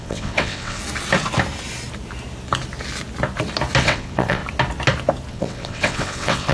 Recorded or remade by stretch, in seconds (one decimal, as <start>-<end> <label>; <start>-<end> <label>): 0.0-0.8 remade; 0.8-3.8 recorded; 3.8-4.4 remade; 4.4-5.3 recorded; 5.3-6.5 remade